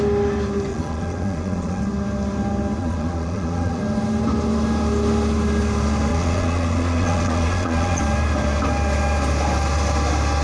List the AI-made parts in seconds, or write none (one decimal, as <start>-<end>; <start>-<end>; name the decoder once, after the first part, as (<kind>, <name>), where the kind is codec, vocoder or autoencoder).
0.7-1.8 (vocoder, Vocos); 2.8-3.8; 6.1-8.0